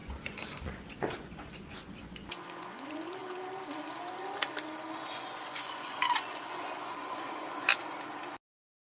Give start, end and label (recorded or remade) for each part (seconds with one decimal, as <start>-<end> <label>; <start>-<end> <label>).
0.0-3.2 remade; 3.2-5.1 recorded; 5.1-7.7 remade; 7.7-8.4 recorded; 8.4-8.9 remade